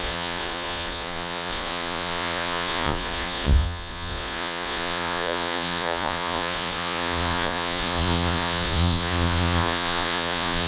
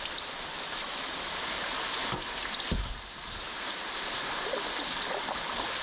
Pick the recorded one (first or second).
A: second